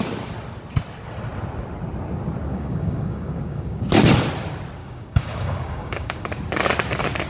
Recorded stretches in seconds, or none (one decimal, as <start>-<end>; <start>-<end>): 0.0-2.5; 3.9-4.8; 6.2-7.3